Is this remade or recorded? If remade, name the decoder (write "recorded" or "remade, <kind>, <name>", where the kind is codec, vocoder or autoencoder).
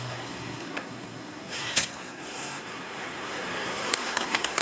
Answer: remade, codec, SNAC